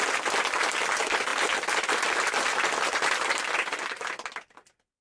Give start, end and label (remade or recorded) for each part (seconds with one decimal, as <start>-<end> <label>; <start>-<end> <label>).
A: 0.0-5.0 recorded